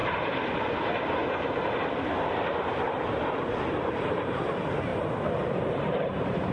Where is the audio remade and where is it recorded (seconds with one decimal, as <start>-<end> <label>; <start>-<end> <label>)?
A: 0.0-3.9 recorded; 3.9-4.9 remade; 4.9-5.7 recorded; 5.7-6.5 remade